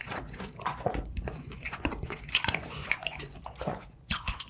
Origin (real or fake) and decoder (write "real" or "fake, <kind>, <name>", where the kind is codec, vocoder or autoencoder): fake, vocoder, Vocos